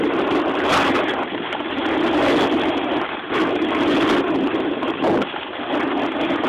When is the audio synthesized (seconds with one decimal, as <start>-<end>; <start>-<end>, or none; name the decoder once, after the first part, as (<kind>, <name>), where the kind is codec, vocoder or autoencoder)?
none